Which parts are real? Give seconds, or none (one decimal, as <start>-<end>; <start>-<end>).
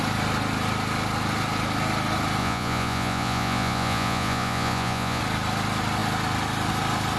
0.0-2.4; 5.2-7.2